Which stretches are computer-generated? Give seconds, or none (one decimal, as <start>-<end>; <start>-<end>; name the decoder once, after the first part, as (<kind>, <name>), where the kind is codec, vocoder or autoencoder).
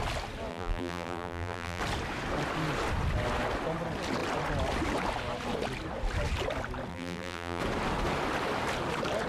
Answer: 0.5-1.8 (vocoder, BigVGAN v2); 6.9-7.6